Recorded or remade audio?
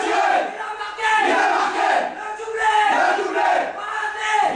recorded